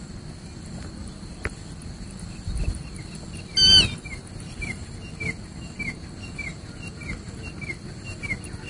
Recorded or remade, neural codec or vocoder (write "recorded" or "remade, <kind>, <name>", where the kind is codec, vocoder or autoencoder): recorded